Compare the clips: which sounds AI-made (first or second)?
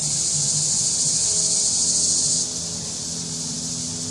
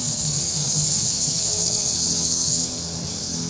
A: second